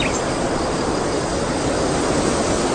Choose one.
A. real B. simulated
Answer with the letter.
A